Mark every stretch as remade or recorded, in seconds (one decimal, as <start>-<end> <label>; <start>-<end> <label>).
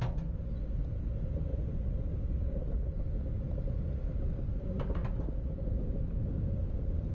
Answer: 0.0-7.1 recorded